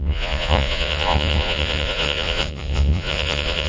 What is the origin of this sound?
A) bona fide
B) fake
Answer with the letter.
B